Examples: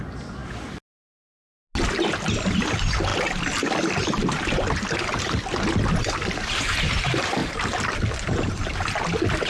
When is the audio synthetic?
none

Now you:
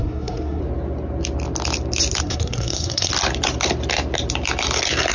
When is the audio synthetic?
0.0-0.6 (codec, SNAC); 2.2-3.1

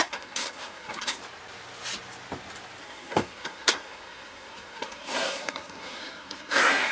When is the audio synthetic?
0.0-1.2 (codec, SNAC); 2.8-6.9